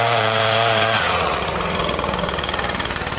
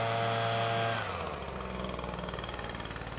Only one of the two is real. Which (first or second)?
second